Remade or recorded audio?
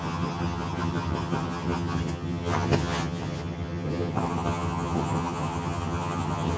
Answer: remade